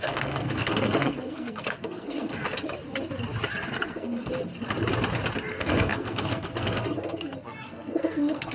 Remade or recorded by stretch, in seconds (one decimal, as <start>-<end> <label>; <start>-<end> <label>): 0.0-2.4 remade; 2.4-3.7 recorded; 3.7-4.3 remade; 4.3-5.5 recorded; 5.5-8.5 remade